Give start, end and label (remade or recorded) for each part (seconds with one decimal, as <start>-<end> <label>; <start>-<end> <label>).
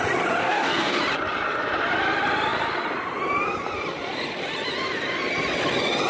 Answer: 0.0-0.4 recorded; 0.4-1.0 remade; 1.0-6.1 recorded